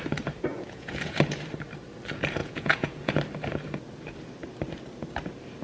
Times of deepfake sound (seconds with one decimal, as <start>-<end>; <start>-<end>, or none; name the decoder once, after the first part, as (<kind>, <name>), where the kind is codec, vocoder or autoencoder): 0.5-1.2 (vocoder, Vocos); 2.4-3.1